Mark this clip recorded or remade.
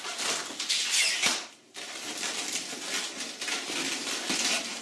recorded